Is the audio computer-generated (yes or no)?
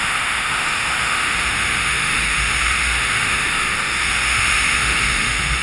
yes